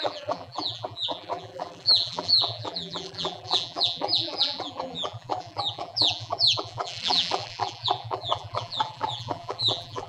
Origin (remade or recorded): remade